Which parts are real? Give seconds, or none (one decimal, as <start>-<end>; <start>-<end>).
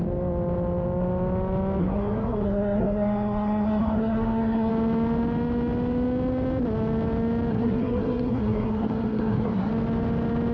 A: 0.0-1.8; 4.7-7.5; 9.7-10.5